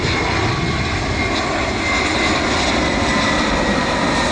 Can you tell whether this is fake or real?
real